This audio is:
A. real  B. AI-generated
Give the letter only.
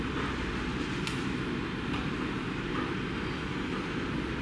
A